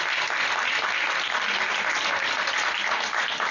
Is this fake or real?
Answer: real